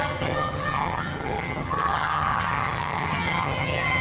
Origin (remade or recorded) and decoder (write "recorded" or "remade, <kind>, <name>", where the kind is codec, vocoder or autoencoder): remade, vocoder, HiFi-GAN